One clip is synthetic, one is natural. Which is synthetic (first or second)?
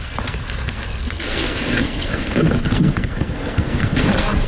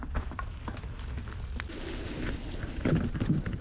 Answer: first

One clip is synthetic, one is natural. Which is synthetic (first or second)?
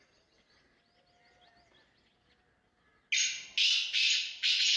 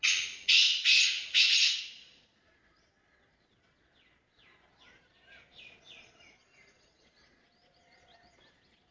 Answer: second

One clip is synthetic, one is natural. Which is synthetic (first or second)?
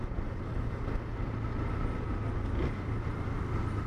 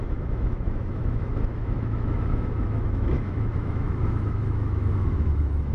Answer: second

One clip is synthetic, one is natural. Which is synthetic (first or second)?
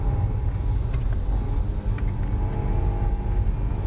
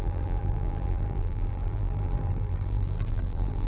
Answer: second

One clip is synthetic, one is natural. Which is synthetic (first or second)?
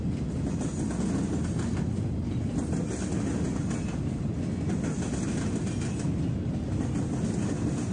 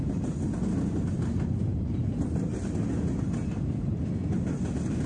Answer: second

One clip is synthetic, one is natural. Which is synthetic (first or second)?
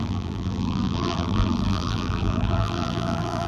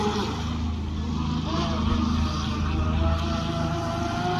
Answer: first